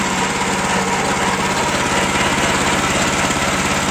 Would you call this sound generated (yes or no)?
no